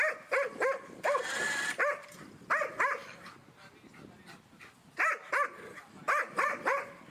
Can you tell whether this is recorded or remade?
recorded